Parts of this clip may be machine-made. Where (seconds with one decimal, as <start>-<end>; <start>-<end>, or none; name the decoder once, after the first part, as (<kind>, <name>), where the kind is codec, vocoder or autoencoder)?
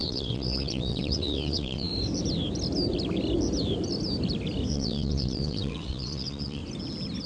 0.0-1.9 (vocoder, WaveNeXt); 4.7-6.6